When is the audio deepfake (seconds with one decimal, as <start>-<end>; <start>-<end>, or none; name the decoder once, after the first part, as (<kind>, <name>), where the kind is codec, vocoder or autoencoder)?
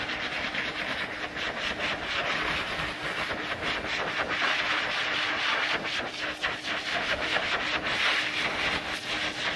6.9-7.5 (autoencoder, DAC-VAE)